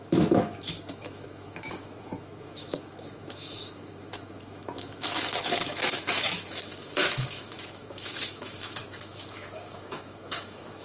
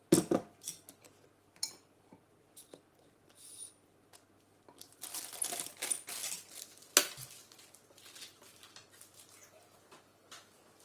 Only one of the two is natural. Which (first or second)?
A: second